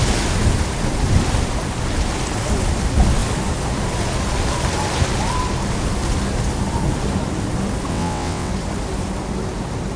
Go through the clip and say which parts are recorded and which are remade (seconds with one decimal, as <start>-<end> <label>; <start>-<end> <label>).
0.0-7.9 recorded; 7.9-8.5 remade; 8.5-10.0 recorded